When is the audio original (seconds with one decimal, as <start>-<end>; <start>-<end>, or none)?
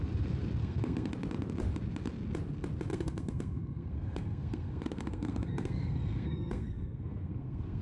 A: 0.0-0.6; 1.1-2.9